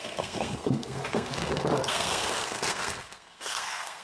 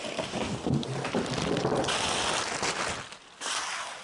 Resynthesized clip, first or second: first